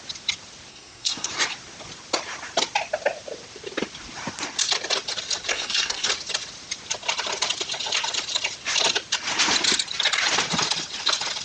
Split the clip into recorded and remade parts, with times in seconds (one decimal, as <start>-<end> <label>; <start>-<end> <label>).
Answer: 0.0-0.7 recorded; 0.7-1.3 remade; 1.3-5.5 recorded; 5.5-6.1 remade; 6.1-11.4 recorded